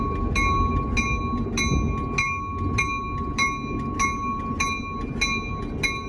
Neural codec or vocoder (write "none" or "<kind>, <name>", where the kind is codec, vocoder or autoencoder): none